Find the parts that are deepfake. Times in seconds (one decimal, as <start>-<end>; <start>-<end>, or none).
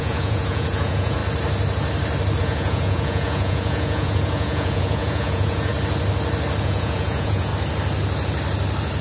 0.0-1.2; 2.4-5.7; 6.6-7.5